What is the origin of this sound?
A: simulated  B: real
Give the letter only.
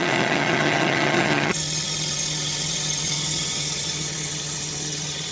A